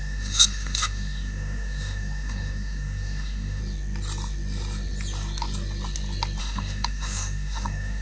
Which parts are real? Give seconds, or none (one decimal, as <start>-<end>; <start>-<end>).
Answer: 3.6-6.4